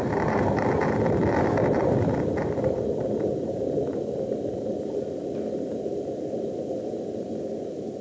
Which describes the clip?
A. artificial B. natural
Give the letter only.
A